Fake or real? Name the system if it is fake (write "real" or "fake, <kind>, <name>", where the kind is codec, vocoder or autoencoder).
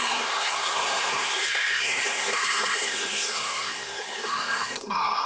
fake, codec, SNAC